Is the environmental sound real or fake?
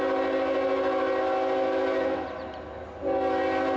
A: real